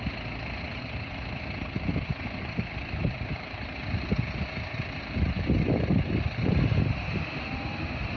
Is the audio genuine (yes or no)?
yes